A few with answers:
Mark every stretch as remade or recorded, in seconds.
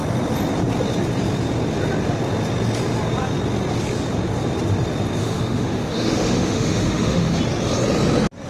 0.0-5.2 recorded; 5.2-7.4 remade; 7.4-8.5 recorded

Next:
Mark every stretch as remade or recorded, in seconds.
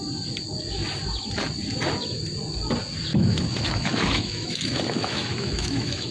0.0-3.1 recorded; 3.1-6.1 remade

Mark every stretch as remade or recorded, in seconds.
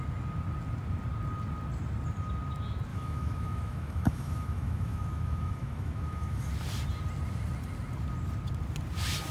0.0-2.9 recorded; 2.9-6.5 remade; 6.5-9.3 recorded